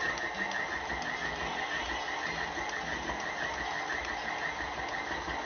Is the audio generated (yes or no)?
no